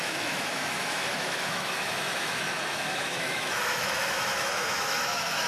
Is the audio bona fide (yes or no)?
no